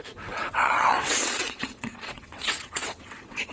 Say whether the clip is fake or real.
fake